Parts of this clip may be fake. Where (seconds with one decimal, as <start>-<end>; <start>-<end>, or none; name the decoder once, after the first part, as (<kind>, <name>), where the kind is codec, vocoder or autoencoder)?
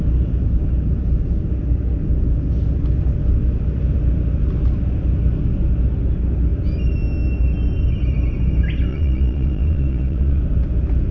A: 8.9-10.4 (vocoder, Vocos)